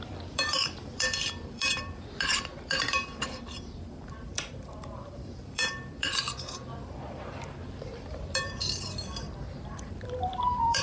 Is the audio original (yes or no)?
no